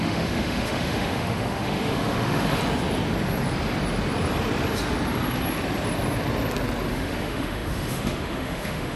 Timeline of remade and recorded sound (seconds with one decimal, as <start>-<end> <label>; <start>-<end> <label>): 0.0-2.6 remade; 2.6-6.9 recorded; 6.9-9.0 remade